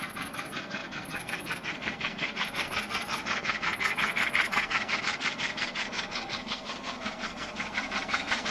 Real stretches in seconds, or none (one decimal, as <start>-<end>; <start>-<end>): none